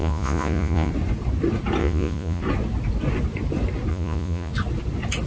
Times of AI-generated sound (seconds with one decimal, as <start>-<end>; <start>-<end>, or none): 0.0-0.9; 1.8-2.4; 3.9-4.5